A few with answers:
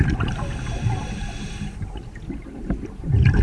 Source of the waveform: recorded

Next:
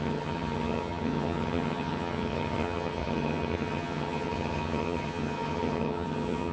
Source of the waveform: remade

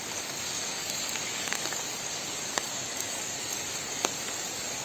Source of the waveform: remade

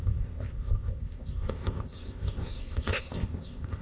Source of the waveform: remade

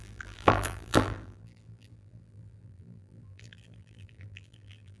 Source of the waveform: remade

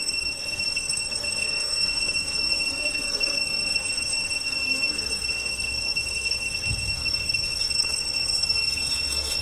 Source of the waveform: remade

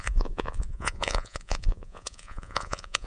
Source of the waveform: remade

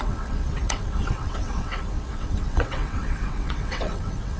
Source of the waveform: remade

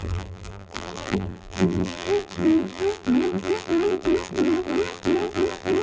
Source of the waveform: remade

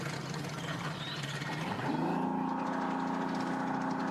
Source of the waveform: recorded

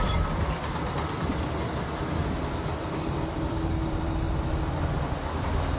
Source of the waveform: remade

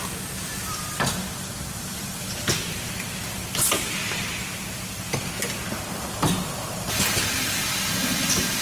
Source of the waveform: recorded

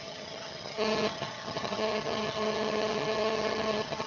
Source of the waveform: remade